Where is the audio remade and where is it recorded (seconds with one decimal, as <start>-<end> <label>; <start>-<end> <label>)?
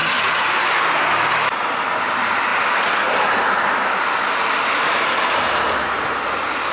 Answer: 0.0-6.7 recorded